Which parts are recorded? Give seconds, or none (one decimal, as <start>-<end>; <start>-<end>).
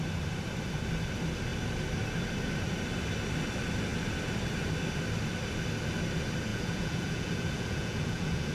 0.0-6.5